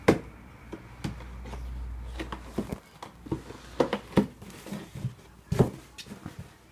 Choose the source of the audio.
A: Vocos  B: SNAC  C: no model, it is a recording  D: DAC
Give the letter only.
C